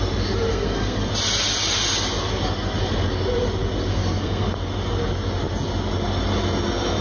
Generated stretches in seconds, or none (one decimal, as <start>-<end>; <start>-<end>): 0.5-1.1; 3.9-4.5

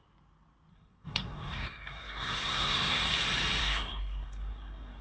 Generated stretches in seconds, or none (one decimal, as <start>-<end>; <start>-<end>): 0.7-3.0; 3.6-5.0

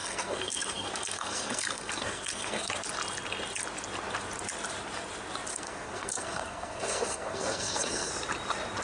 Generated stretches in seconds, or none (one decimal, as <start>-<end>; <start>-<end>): 0.0-2.7; 5.5-8.1

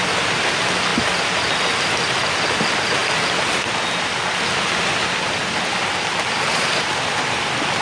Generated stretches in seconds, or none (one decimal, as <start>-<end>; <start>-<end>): none